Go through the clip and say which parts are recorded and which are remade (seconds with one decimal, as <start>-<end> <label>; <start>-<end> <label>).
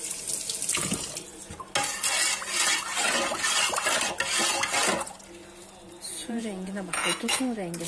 0.0-6.2 recorded; 6.2-7.3 remade; 7.3-7.9 recorded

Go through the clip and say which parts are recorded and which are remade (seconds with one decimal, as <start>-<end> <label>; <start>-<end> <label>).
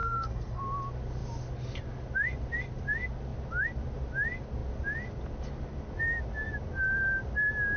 0.0-0.6 remade; 0.6-7.8 recorded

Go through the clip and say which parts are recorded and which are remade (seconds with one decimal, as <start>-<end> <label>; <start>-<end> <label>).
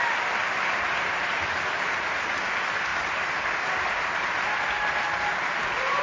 0.0-6.0 recorded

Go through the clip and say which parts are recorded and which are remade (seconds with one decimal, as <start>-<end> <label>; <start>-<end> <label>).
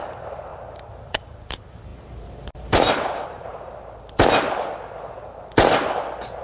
0.0-3.5 remade; 3.5-6.4 recorded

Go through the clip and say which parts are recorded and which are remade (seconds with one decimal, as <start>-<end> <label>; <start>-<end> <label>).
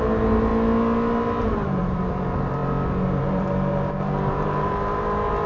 0.0-0.5 remade; 0.5-1.4 recorded; 1.4-2.6 remade; 2.6-3.2 recorded; 3.2-5.5 remade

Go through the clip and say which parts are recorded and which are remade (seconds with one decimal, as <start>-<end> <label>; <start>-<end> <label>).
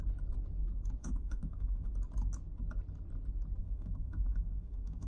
0.0-1.0 recorded; 1.0-1.9 remade; 1.9-3.6 recorded; 3.6-5.1 remade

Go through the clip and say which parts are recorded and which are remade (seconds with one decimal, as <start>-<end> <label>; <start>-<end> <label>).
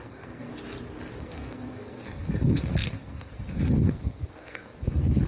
0.0-0.5 remade; 0.5-1.2 recorded; 1.2-5.3 remade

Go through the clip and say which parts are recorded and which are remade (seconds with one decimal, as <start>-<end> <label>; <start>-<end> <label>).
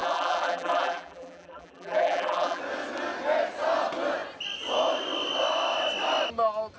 0.0-2.6 remade; 2.6-6.8 recorded